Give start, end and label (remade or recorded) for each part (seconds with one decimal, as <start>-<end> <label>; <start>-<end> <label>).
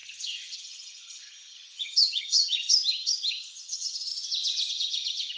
0.0-4.1 remade; 4.1-4.7 recorded; 4.7-5.4 remade